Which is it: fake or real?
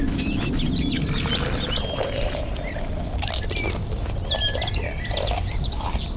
real